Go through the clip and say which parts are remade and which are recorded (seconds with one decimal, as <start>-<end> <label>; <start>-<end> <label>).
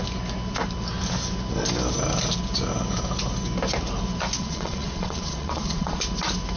0.0-4.4 recorded; 4.4-6.0 remade; 6.0-6.6 recorded